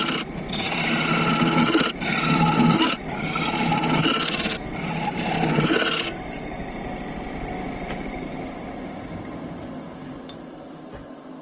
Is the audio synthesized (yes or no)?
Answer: no